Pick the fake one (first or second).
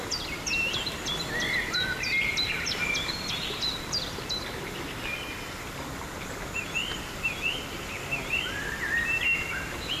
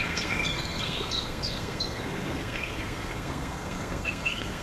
second